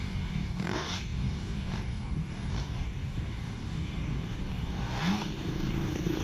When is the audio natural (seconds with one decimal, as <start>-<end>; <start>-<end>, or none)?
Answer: none